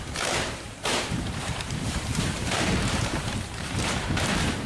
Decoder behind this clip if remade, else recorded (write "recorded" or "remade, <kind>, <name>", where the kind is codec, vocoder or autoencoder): remade, vocoder, BigVGAN v2